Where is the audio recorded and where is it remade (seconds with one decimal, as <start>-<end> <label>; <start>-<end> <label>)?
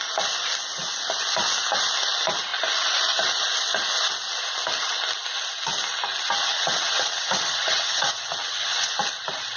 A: 0.0-6.5 recorded; 6.5-8.9 remade; 8.9-9.6 recorded